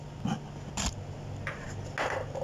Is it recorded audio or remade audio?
recorded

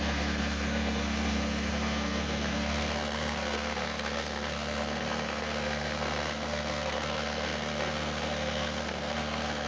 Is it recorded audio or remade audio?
remade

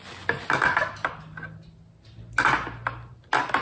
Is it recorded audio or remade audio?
recorded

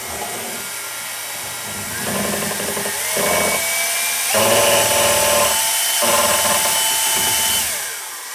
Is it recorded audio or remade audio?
recorded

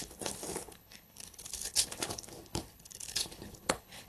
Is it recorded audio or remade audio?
remade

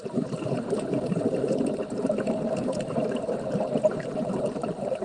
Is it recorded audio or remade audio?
remade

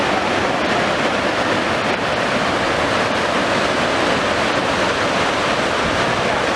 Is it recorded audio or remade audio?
recorded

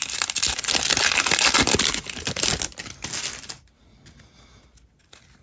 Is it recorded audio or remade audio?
recorded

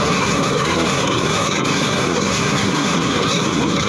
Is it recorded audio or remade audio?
remade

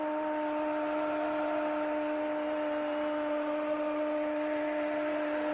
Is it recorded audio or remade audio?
recorded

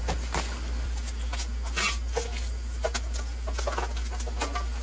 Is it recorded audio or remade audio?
recorded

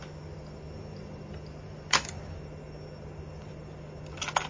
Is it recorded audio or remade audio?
recorded